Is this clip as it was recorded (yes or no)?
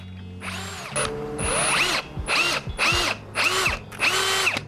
yes